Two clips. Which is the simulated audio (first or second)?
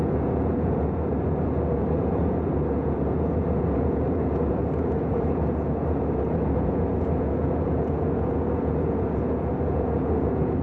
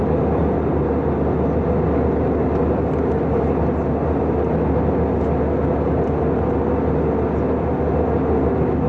first